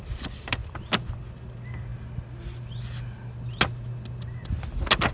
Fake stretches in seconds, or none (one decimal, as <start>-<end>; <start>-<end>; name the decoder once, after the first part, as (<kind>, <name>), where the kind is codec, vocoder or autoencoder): none